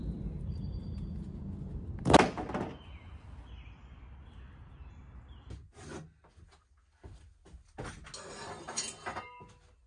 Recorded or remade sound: recorded